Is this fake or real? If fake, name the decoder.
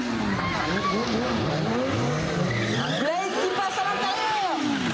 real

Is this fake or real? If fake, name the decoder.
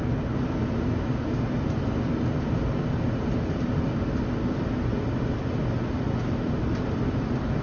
real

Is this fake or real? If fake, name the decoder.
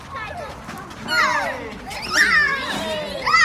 real